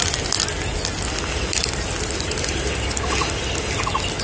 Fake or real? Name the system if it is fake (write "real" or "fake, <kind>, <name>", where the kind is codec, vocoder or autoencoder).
real